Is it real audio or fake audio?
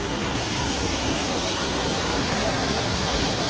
fake